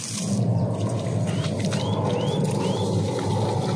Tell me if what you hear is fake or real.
real